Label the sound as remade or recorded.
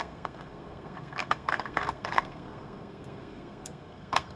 remade